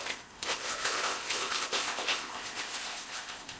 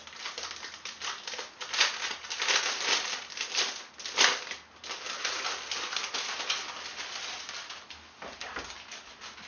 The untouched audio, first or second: second